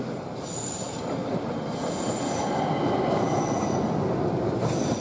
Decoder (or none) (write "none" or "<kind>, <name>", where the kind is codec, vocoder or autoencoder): none